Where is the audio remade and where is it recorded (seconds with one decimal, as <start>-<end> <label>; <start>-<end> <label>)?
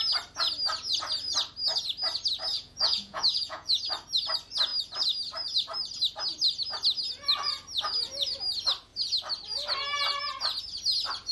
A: 0.0-2.5 recorded; 2.5-3.8 remade; 3.8-11.3 recorded